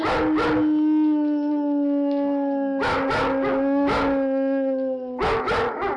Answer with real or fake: real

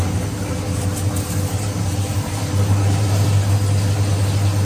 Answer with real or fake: real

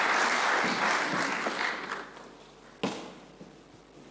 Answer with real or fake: real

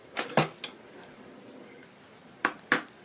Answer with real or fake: real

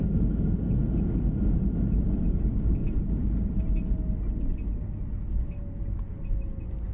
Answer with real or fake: real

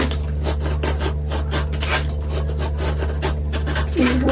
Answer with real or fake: real